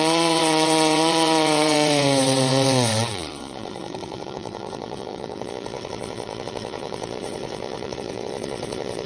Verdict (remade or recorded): remade